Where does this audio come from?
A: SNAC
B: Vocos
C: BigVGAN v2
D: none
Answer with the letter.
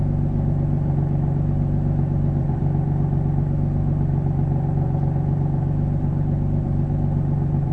C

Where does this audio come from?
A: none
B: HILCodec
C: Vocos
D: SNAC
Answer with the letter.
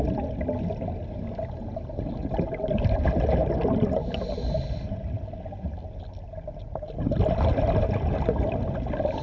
A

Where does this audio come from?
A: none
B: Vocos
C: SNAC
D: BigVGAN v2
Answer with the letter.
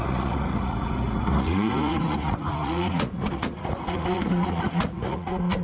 B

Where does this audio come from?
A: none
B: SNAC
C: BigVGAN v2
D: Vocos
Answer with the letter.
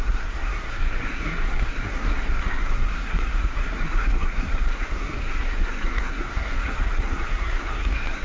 B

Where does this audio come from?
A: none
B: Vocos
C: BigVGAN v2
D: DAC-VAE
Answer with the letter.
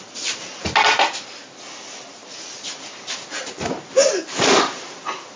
A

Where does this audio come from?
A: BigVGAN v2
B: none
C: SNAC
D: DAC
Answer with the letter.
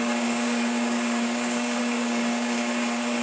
D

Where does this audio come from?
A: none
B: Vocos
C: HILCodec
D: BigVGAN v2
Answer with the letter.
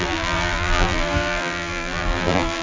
D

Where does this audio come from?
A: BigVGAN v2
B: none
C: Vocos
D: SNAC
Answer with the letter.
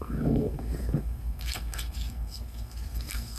D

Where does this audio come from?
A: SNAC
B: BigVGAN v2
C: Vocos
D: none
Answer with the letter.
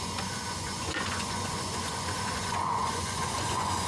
C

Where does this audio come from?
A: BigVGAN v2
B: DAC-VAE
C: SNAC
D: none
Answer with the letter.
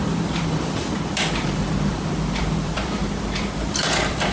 A